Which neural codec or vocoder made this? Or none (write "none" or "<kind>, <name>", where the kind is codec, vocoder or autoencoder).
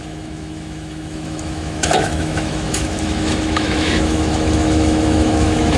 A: autoencoder, DAC-VAE